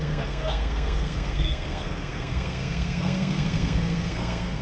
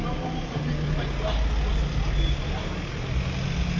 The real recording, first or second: second